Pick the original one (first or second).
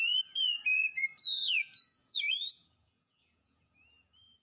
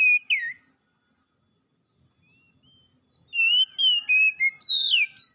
second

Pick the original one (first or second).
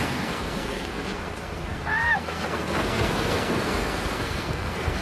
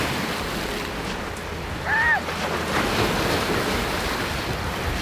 second